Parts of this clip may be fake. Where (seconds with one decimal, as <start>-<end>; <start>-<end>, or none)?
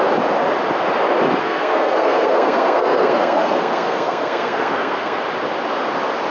1.4-5.2